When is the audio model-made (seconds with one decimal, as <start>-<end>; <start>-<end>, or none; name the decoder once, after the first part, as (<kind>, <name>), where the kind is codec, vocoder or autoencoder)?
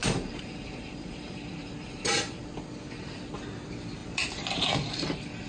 0.0-3.3 (vocoder, BigVGAN v2); 4.0-4.7